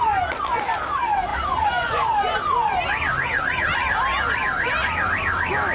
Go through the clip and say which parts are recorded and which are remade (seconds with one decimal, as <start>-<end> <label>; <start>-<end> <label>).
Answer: 0.0-5.7 recorded